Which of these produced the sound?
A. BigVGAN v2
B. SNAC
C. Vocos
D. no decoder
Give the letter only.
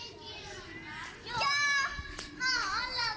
A